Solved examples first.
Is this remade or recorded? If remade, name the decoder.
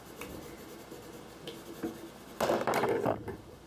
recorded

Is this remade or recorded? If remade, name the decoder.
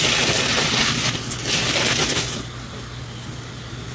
recorded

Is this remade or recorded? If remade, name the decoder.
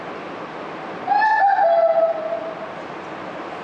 recorded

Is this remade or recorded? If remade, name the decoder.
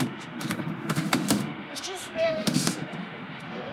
remade, autoencoder, DAC-VAE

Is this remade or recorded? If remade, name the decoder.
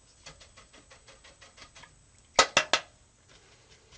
recorded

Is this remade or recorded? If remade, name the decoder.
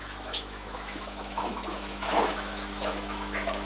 remade, autoencoder, DAC-VAE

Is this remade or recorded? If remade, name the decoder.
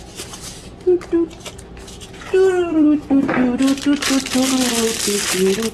recorded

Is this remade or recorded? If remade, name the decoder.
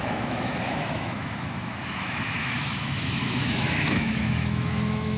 remade, autoencoder, DAC-VAE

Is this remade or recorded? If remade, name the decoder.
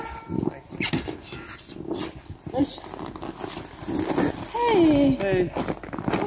recorded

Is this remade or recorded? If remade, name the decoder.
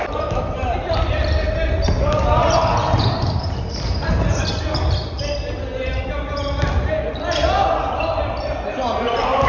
recorded